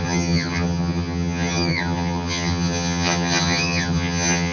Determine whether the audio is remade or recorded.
remade